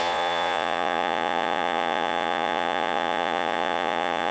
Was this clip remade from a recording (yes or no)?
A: yes